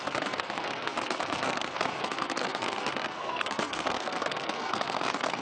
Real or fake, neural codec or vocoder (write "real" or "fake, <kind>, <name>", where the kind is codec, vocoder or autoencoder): fake, codec, SNAC